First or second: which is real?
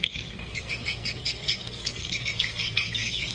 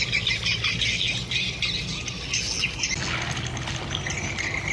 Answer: second